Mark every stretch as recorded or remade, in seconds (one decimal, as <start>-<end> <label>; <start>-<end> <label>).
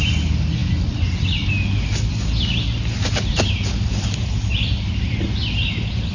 0.0-6.1 recorded